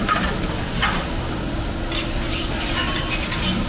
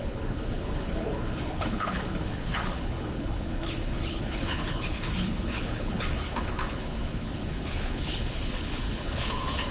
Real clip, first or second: first